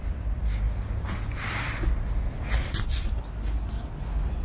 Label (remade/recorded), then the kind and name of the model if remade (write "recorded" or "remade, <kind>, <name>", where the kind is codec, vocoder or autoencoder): recorded